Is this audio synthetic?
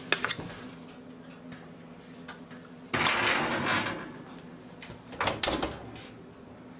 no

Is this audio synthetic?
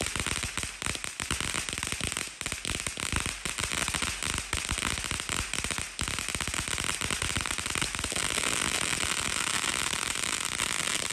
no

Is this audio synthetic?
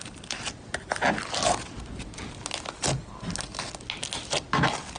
no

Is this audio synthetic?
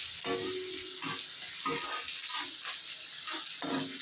no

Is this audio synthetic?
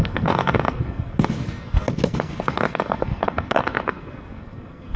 yes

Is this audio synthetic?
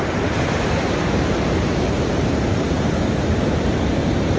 yes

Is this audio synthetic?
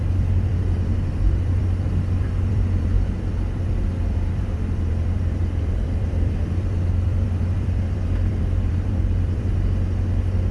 yes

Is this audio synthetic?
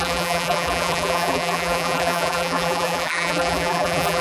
yes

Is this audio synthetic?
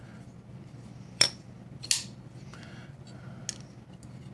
no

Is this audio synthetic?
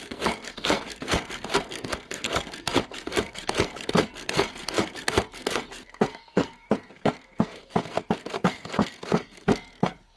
yes